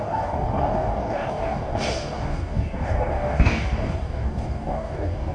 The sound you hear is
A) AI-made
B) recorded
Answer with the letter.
A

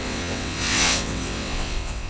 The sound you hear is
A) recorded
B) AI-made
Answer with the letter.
B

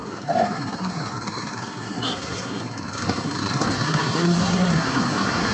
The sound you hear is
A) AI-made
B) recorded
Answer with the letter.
A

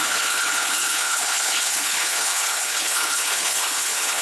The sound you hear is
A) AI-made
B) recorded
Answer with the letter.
A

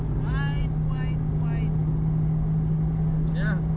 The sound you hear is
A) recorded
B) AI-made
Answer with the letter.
A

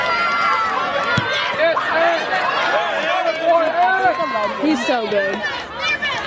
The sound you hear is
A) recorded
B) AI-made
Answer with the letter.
A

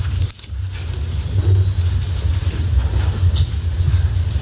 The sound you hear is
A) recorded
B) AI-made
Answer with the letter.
A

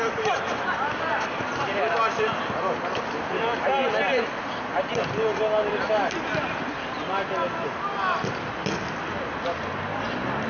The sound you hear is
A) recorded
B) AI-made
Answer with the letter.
A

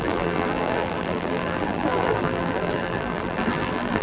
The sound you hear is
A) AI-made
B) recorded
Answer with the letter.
A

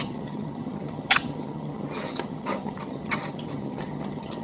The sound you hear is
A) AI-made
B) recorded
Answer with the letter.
A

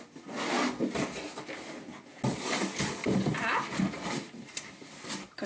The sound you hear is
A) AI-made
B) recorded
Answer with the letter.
B